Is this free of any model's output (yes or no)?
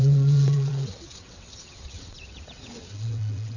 no